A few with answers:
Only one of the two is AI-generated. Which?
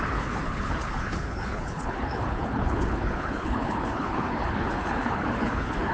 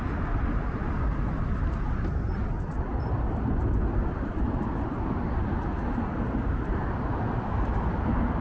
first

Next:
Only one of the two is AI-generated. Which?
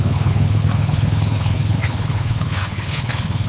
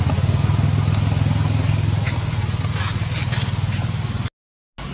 first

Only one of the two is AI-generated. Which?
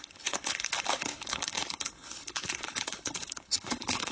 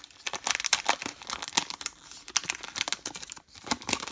first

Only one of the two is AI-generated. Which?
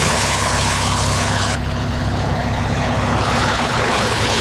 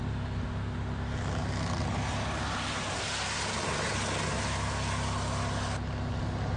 first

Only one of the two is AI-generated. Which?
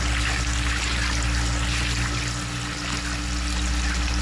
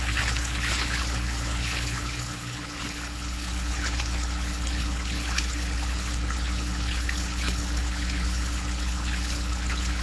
second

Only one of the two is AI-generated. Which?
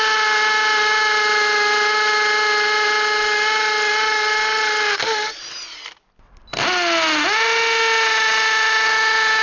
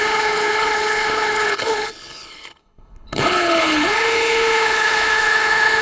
second